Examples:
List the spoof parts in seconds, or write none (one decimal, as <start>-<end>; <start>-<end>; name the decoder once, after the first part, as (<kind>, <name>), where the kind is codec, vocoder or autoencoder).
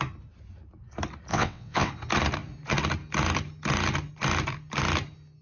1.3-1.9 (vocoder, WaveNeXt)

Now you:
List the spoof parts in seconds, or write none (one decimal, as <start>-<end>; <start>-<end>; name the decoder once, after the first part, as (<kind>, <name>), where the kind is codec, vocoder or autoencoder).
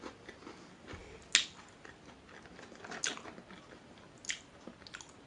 none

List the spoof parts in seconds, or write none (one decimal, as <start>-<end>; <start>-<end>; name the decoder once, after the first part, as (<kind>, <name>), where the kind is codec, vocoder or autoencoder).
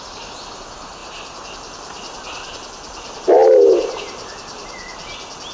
none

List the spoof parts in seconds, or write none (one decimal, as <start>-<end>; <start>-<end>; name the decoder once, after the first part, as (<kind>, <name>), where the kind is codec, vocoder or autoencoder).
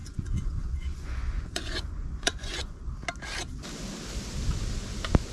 0.0-2.9 (vocoder, Vocos)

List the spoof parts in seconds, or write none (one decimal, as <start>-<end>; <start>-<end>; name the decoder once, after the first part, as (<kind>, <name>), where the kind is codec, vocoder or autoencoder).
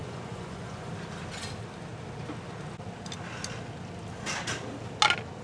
0.0-0.9 (vocoder, Vocos)